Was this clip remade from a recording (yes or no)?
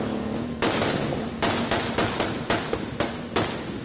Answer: no